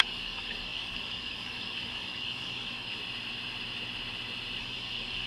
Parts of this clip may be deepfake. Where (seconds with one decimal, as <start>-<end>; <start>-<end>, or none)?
0.0-3.0; 4.6-5.3